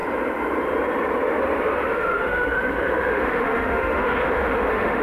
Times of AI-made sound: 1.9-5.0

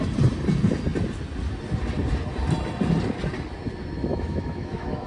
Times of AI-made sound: 4.1-5.1

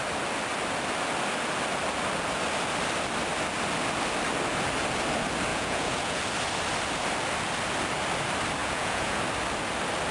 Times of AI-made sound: 5.5-6.2; 8.6-9.2

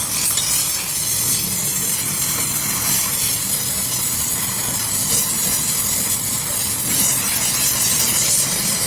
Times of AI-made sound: 1.7-6.4; 7.9-8.9